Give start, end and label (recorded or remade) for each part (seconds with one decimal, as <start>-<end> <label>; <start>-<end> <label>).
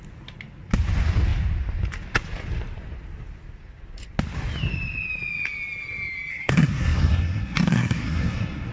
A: 0.0-6.3 recorded; 6.3-8.7 remade